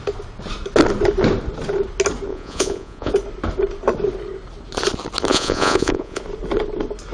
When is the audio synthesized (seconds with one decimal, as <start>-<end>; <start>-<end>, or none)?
2.3-3.1; 5.3-6.2